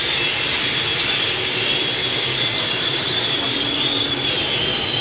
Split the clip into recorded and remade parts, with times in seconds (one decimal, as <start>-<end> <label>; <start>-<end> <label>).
0.0-2.9 recorded; 2.9-3.9 remade; 3.9-5.0 recorded